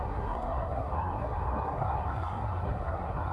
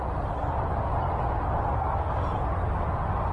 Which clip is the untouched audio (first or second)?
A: second